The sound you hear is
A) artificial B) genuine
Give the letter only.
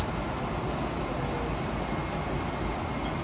B